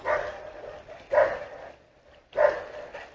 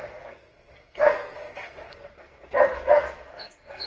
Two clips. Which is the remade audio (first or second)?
second